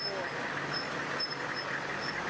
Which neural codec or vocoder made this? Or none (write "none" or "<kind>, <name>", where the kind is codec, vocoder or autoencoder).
none